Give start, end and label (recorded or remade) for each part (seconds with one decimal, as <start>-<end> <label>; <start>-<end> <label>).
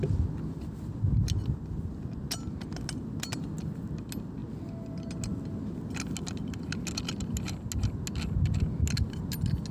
0.0-9.7 recorded